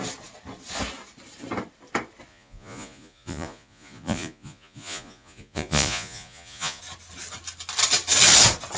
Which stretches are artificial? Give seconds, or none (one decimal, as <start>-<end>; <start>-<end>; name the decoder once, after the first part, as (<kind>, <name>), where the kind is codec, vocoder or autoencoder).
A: 2.3-6.8 (vocoder, Vocos)